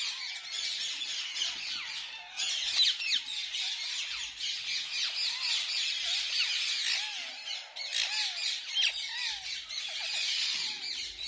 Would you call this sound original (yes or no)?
yes